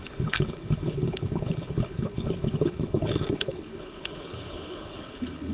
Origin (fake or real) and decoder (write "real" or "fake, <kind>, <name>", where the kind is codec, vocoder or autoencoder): fake, codec, HILCodec